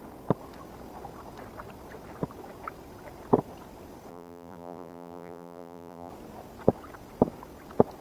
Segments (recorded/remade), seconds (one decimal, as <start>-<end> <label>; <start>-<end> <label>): 0.0-4.1 recorded; 4.1-6.1 remade; 6.1-8.0 recorded